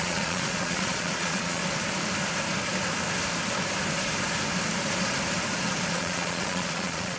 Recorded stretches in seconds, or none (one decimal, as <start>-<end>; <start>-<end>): 1.6-5.9